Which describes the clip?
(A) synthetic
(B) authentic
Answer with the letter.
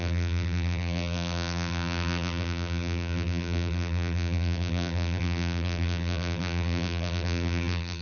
A